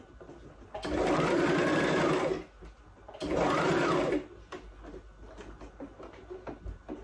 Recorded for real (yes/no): yes